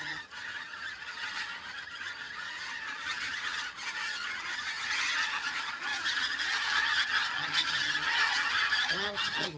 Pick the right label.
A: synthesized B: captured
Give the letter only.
A